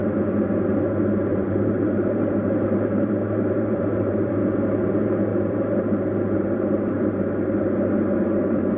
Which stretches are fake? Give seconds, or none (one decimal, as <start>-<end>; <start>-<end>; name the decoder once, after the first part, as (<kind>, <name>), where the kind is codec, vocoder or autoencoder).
1.3-4.3 (vocoder, BigVGAN v2); 5.3-7.1